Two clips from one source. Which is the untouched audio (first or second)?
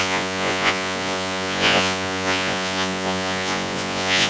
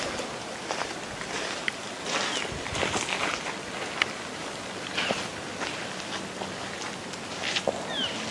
second